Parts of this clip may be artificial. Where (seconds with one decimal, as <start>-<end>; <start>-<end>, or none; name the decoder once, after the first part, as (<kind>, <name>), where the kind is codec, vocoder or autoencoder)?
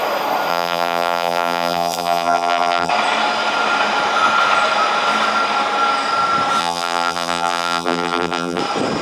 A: 0.5-2.9 (vocoder, BigVGAN v2); 6.6-8.6